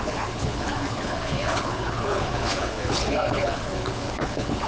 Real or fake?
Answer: fake